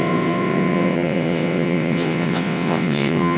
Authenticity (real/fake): fake